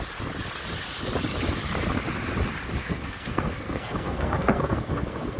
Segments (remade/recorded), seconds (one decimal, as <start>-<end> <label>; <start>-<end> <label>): 0.0-2.8 recorded; 2.8-5.4 remade